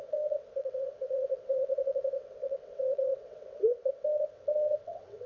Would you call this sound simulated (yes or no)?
yes